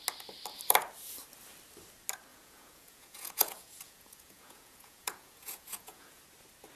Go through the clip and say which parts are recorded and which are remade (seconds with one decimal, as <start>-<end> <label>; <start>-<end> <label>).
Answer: 0.0-2.3 recorded; 2.3-6.2 remade; 6.2-6.8 recorded